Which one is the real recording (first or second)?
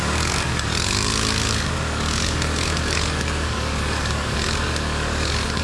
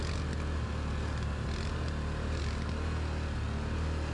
second